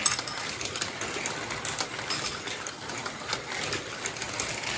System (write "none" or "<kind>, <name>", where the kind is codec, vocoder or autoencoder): none